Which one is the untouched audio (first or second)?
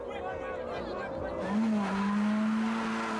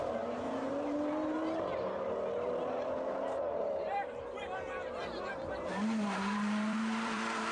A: first